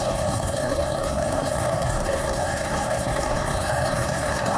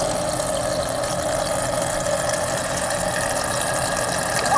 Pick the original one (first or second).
second